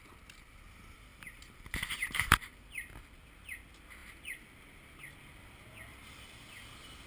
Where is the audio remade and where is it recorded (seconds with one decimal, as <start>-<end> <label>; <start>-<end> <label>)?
0.0-1.1 recorded; 1.1-3.0 remade; 3.0-5.9 recorded; 5.9-6.5 remade; 6.5-7.1 recorded